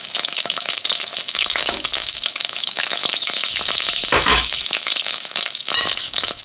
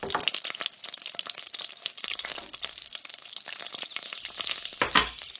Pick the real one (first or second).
second